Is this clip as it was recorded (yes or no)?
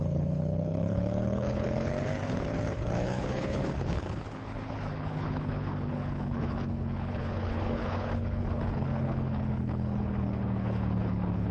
no